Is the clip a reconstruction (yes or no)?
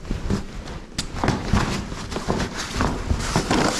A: no